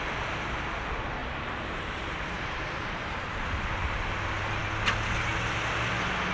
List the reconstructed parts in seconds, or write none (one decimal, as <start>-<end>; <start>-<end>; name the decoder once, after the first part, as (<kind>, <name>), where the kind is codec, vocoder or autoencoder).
1.2-3.6 (vocoder, BigVGAN v2)